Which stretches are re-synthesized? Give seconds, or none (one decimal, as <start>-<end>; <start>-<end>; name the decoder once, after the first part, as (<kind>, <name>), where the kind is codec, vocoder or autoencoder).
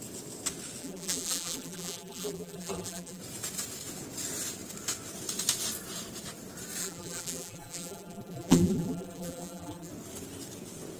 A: 0.8-3.2 (vocoder, BigVGAN v2); 6.8-9.9